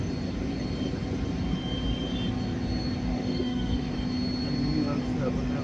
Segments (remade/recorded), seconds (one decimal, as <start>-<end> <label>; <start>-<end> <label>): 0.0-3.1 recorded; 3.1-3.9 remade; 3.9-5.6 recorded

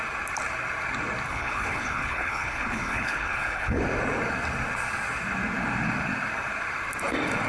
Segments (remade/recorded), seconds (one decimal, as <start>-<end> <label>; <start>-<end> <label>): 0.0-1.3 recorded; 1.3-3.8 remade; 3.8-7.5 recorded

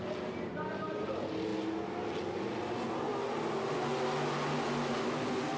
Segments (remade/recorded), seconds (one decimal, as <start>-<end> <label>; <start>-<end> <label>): 0.0-5.6 recorded